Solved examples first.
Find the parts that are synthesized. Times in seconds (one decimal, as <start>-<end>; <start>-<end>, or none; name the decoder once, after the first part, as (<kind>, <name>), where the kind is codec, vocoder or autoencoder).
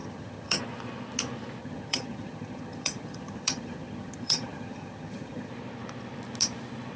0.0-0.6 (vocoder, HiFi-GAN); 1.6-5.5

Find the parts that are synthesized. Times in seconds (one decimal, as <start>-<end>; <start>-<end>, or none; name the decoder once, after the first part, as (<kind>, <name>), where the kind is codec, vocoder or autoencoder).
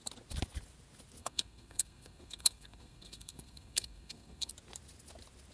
1.2-4.5 (codec, SNAC)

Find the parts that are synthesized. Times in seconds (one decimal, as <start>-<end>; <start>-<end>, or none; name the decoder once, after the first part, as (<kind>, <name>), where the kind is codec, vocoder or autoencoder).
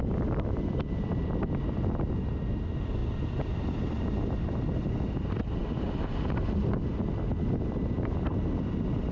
none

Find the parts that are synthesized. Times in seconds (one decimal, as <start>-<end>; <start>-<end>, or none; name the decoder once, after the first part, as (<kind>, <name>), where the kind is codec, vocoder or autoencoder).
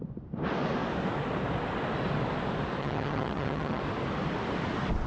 2.8-3.8 (vocoder, HiFi-GAN)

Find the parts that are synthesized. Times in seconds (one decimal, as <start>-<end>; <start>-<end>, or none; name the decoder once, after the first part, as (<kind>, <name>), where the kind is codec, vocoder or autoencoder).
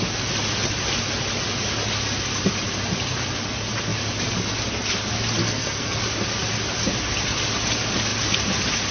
5.4-6.0 (codec, SNAC)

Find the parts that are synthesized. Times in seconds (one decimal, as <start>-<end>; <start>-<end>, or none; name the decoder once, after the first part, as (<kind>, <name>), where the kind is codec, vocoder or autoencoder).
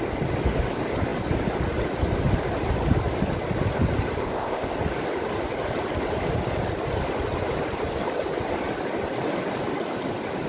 4.2-4.7 (codec, ZipCodec)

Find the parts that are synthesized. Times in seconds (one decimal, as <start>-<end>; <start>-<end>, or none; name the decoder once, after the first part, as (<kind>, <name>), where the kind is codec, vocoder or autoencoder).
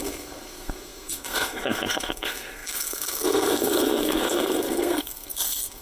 0.0-5.8 (codec, SNAC)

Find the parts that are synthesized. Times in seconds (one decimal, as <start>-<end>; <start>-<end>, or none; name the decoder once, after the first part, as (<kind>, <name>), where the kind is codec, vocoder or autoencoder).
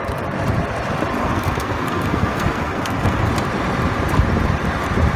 1.2-3.3 (codec, SNAC)